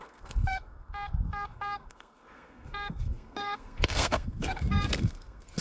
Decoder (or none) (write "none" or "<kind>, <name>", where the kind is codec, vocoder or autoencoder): codec, SNAC